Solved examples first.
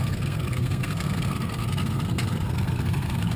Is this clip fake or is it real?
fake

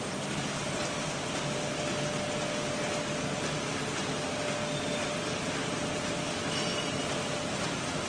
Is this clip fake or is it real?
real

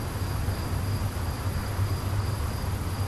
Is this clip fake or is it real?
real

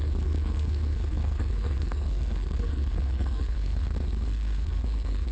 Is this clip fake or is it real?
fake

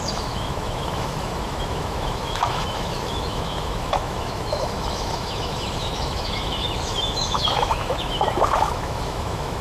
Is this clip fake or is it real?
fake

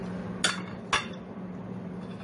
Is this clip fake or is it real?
real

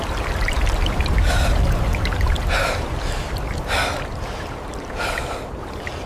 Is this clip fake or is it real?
real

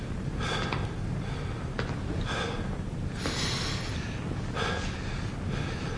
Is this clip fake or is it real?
real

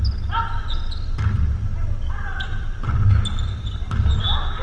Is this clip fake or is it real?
real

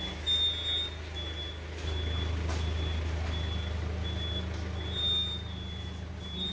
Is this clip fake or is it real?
real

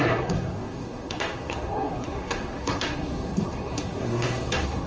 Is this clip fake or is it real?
fake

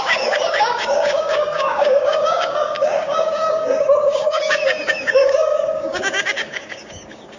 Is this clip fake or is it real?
fake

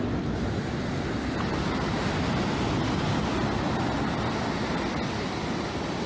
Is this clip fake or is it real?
real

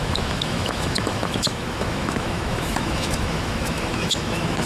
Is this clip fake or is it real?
fake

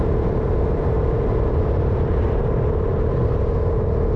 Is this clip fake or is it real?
real